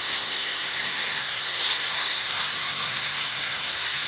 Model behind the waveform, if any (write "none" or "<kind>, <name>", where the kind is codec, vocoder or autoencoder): codec, SNAC